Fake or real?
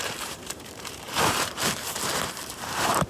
fake